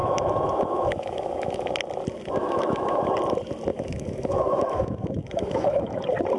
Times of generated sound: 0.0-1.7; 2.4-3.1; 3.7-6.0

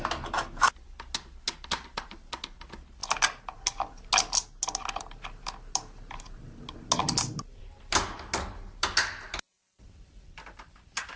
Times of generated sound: none

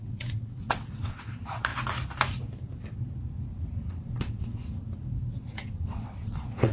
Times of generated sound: 0.0-1.7; 3.5-4.6; 5.3-6.7